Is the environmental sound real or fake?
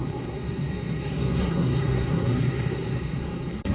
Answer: fake